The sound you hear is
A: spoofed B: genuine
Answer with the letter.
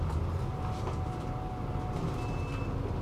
B